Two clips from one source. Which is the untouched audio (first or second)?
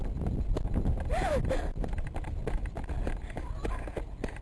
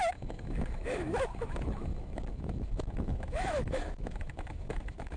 first